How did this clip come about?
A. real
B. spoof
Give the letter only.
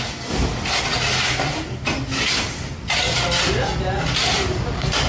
A